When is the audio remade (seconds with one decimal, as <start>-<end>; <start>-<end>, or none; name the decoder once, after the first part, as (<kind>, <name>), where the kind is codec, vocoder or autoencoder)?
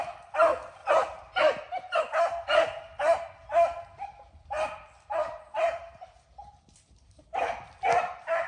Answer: none